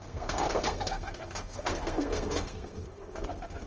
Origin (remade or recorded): remade